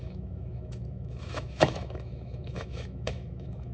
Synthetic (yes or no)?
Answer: yes